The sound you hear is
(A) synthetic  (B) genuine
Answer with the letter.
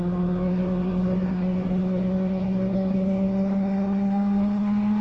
A